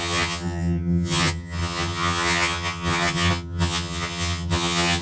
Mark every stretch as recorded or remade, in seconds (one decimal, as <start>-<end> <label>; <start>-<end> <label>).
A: 0.0-5.0 remade